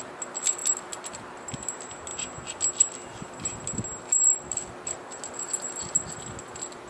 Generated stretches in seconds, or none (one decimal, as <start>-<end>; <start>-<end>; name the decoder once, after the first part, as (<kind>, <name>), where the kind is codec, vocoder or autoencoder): none

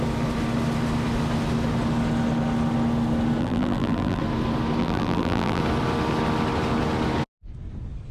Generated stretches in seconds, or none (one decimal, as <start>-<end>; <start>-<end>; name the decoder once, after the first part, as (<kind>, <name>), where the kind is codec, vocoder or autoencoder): 3.4-4.2 (vocoder, BigVGAN v2); 4.8-5.6